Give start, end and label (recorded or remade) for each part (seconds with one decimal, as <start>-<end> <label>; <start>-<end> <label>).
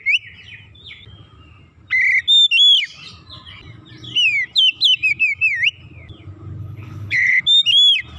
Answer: 0.0-6.6 recorded; 6.6-7.4 remade; 7.4-8.2 recorded